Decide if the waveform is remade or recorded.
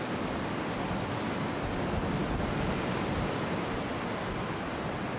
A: recorded